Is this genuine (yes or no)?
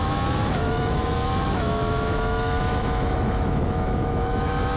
no